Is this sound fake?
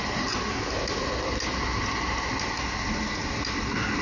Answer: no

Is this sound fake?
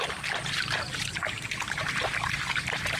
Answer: yes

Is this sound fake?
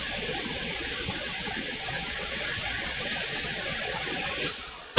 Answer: yes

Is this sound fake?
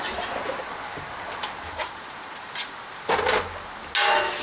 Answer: no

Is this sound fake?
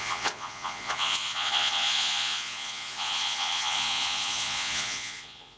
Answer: yes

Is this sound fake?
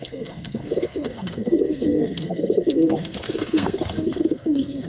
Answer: yes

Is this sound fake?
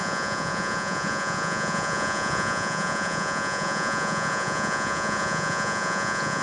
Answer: yes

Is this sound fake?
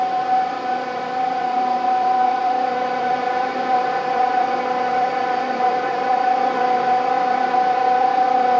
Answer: yes